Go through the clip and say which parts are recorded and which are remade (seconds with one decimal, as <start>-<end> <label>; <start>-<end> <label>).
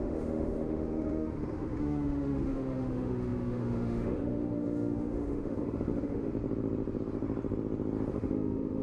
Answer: 0.0-6.3 remade; 6.3-8.1 recorded; 8.1-8.8 remade